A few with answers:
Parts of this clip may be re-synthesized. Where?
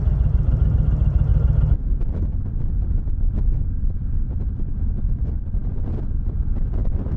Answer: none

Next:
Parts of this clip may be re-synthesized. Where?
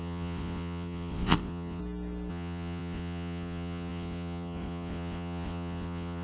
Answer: 0.0-1.8 (vocoder, Vocos); 2.3-6.2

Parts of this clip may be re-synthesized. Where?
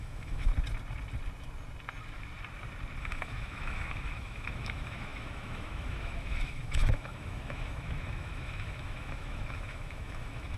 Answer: 0.0-0.5 (autoencoder, DAC-VAE); 3.0-10.6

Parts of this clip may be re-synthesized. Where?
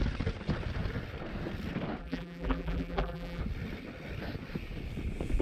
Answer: 2.0-3.4 (vocoder, BigVGAN v2)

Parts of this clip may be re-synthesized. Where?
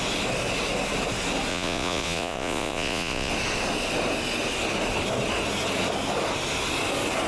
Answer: 1.5-3.3 (vocoder, Vocos)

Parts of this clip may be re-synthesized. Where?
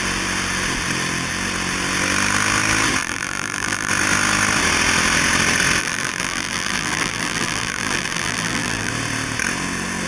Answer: 3.0-3.9 (vocoder, BigVGAN v2); 5.8-8.9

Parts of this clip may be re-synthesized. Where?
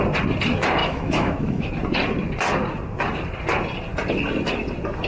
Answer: 0.8-1.7 (autoencoder, DAC-VAE)